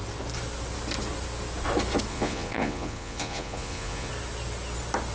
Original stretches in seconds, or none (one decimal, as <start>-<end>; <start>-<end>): 0.0-2.1; 4.1-5.1